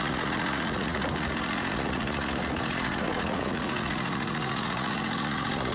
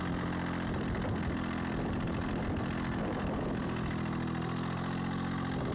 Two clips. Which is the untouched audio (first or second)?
second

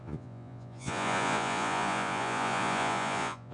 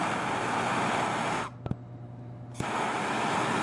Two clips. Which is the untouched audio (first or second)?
second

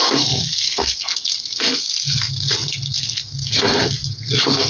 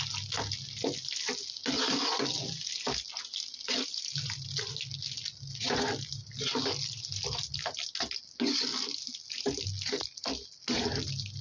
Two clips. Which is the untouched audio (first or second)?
second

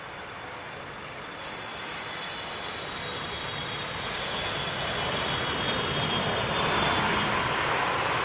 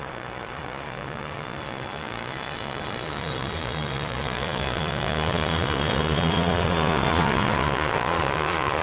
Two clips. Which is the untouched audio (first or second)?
first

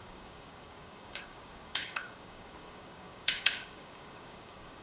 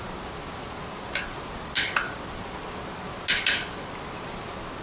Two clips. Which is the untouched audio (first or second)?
second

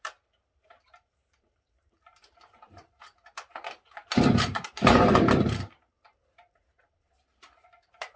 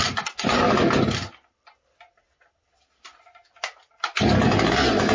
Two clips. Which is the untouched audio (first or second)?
second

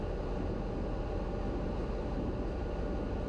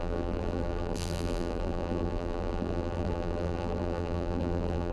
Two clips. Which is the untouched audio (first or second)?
first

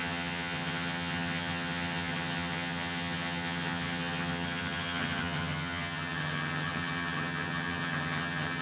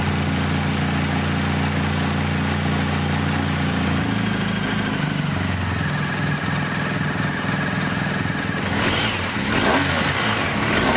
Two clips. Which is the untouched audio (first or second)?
second